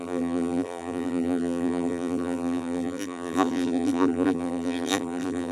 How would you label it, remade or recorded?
remade